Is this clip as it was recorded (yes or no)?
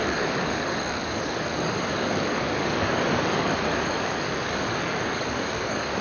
no